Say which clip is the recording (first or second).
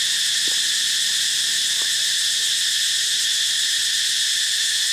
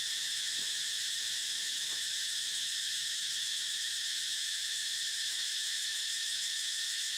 first